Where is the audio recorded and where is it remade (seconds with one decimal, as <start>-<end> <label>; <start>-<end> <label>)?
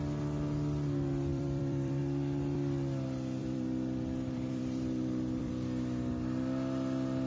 0.0-1.3 recorded; 1.3-2.0 remade; 2.0-3.4 recorded; 3.4-5.5 remade; 5.5-7.3 recorded